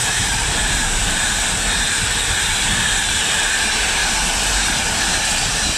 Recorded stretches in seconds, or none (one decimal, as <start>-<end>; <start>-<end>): 4.0-5.2

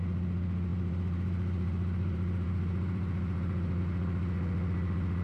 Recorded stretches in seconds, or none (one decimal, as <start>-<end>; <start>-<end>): 0.0-0.7; 3.8-5.2

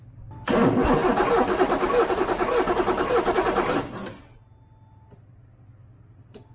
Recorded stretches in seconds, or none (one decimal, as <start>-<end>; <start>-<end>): 0.0-6.5

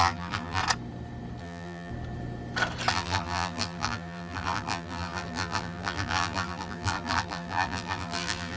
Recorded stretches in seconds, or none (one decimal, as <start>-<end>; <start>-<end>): 0.6-1.4; 1.9-2.9

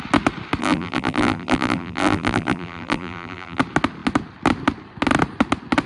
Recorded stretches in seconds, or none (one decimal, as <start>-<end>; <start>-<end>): 0.0-0.6; 3.6-5.9

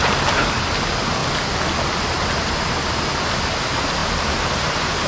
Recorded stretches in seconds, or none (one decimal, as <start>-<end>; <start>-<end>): 0.6-4.0

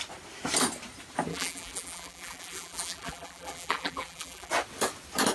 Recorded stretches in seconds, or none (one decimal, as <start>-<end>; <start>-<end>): 0.0-1.3; 4.5-5.3